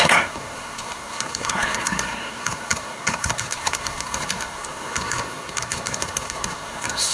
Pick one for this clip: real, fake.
fake